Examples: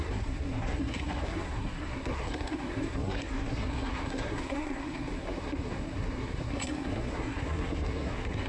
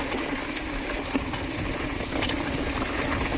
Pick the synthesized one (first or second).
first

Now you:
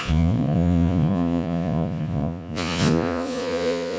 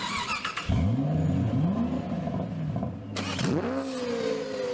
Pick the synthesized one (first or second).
first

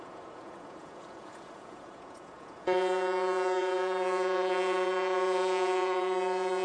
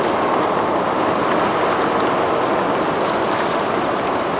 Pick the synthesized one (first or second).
first